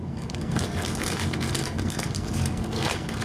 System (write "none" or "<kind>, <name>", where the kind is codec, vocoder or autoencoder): codec, SNAC